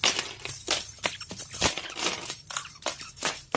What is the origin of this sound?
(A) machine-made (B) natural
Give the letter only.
B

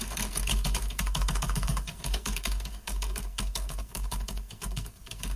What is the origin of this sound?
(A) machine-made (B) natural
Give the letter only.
A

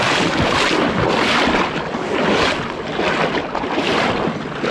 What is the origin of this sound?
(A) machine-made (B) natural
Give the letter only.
B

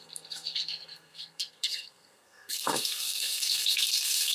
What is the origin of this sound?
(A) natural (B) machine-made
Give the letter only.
B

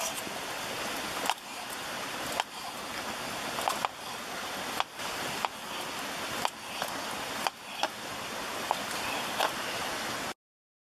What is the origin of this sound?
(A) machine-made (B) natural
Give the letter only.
B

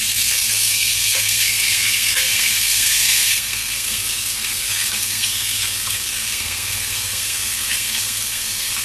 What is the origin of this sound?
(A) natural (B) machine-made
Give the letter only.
B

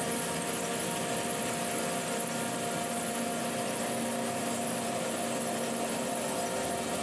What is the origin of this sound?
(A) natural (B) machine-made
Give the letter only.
A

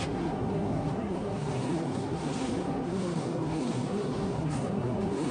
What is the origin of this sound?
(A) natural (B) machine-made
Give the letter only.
B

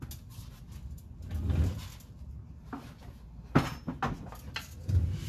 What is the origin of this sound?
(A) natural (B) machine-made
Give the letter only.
A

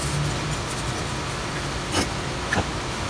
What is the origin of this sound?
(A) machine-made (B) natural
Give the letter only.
B